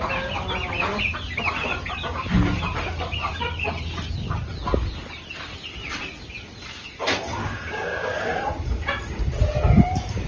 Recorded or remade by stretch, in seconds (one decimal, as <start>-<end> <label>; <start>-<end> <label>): 0.0-7.4 recorded; 7.4-8.4 remade; 8.4-10.3 recorded